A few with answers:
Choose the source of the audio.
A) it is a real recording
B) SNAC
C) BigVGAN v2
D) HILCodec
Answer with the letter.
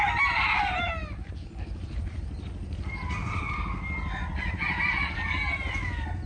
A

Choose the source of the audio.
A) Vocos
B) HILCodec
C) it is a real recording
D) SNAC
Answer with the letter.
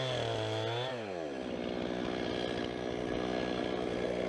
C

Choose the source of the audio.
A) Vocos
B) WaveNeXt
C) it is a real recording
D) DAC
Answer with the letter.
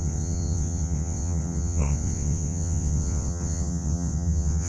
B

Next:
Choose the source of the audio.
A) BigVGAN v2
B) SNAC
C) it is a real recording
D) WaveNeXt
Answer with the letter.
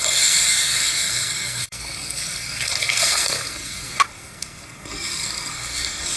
B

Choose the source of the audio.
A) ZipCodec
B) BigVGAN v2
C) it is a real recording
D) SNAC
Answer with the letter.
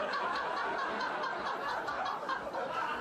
C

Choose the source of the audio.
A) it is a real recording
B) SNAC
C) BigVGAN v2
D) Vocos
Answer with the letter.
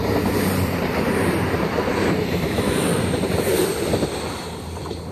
C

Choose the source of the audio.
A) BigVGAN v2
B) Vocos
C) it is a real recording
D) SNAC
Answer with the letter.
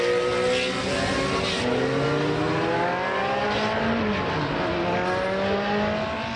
C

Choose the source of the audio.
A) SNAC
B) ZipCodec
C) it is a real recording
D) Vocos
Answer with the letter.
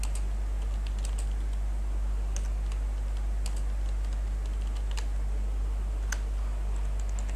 C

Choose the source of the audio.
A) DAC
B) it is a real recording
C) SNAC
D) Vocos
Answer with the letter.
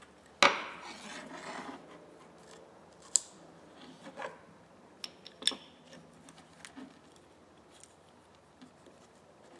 B